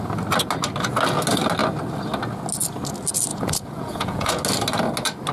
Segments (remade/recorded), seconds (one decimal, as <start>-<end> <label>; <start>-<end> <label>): 0.0-3.3 recorded; 3.3-4.3 remade; 4.3-5.3 recorded